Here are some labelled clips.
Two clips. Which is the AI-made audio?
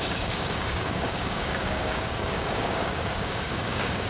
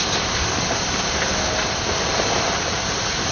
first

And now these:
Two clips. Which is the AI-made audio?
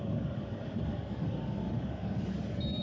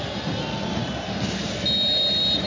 first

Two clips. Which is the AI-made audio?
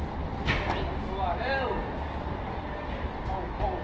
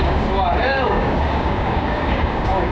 second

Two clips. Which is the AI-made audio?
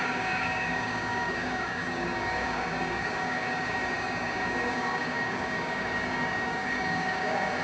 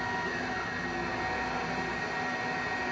first